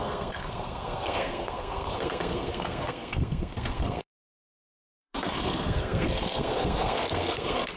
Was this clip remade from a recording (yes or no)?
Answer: yes